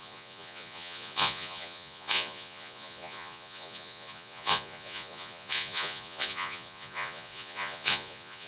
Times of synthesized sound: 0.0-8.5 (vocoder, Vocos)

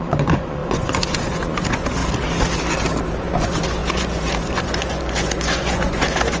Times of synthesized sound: 0.0-2.0 (vocoder, Vocos); 3.1-6.4

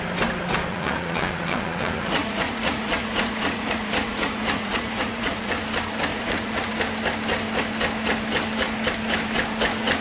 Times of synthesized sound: 0.7-5.5 (vocoder, Vocos); 6.1-6.7